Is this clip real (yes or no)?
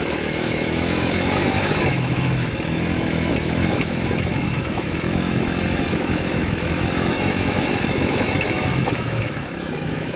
no